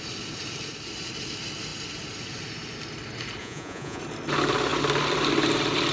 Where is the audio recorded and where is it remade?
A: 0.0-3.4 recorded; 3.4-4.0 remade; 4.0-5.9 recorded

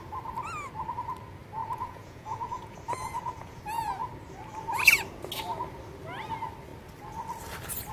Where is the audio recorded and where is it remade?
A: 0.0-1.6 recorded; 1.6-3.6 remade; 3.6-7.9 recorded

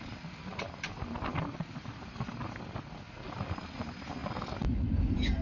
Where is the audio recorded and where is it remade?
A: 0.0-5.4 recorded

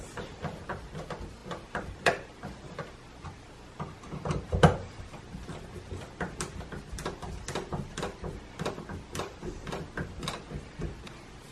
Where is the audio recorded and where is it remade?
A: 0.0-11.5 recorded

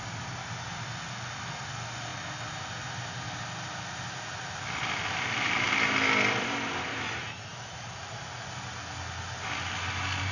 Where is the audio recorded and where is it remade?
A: 0.0-6.9 recorded; 6.9-7.7 remade; 7.7-10.3 recorded